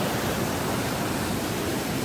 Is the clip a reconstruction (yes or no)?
no